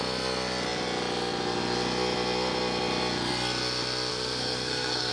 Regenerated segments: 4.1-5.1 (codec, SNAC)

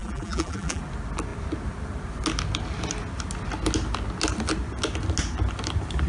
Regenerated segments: 0.0-0.8 (vocoder, BigVGAN v2)